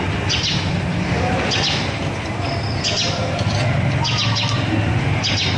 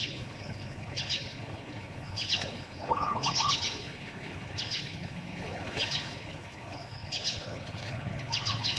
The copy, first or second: second